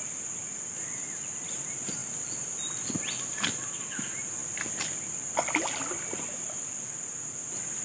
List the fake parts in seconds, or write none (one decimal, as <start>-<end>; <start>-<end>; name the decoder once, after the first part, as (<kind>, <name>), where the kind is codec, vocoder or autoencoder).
2.0-3.2 (vocoder, BigVGAN v2); 4.4-6.2